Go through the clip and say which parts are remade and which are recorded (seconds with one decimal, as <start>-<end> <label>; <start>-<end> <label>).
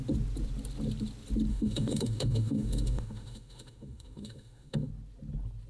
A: 0.0-1.5 recorded; 1.5-4.9 remade; 4.9-5.7 recorded